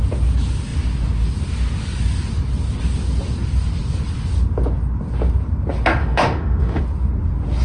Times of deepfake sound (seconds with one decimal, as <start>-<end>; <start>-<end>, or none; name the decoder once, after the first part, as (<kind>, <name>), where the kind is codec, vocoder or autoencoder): 6.0-6.8 (autoencoder, DAC-VAE)